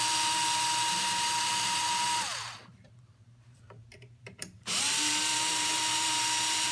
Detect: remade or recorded remade